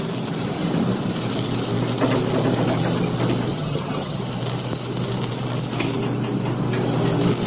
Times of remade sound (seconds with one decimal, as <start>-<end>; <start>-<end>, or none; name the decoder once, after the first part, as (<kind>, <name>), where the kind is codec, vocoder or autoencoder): 3.5-4.2 (vocoder, HiFi-GAN)